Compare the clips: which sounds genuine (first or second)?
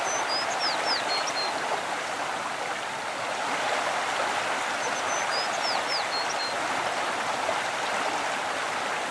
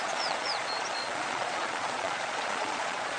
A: first